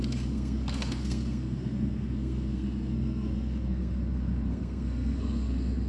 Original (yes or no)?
no